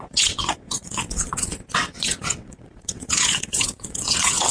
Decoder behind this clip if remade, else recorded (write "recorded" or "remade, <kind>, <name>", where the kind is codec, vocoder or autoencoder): remade, vocoder, WaveNeXt